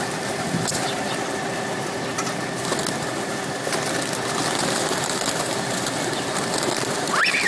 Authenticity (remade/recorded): recorded